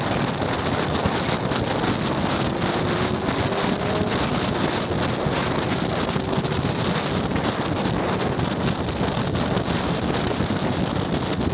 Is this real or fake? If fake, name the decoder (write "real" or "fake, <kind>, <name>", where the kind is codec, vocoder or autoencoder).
real